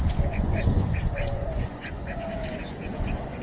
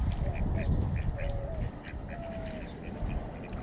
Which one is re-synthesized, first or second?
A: first